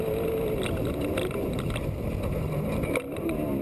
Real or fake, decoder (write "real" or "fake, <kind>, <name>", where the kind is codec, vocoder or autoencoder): real